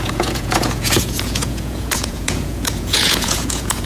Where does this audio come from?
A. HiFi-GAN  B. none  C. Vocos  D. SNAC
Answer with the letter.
C